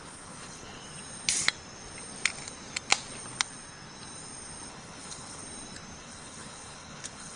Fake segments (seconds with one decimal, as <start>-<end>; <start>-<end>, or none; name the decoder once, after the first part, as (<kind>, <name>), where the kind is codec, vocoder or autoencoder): 0.0-0.8 (codec, HILCodec); 4.7-5.4; 6.0-7.4